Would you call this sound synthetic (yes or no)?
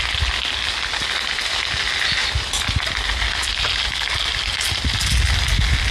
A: no